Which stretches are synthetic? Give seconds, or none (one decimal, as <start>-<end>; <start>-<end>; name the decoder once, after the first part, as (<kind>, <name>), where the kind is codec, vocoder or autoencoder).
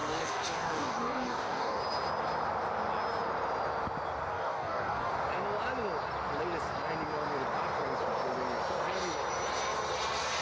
0.0-1.8 (codec, DAC); 4.3-5.1